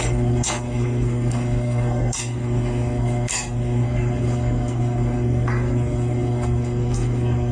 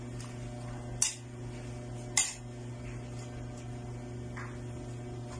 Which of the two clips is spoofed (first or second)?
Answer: first